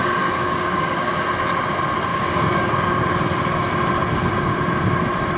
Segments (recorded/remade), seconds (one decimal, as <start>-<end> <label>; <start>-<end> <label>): 0.0-1.1 remade; 1.1-2.1 recorded; 2.1-3.0 remade; 3.0-5.4 recorded